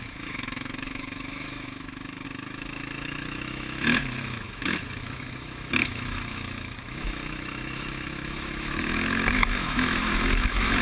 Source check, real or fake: fake